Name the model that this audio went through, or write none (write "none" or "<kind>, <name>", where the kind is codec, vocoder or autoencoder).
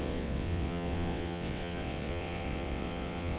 vocoder, WaveNeXt